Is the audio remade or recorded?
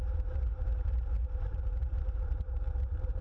remade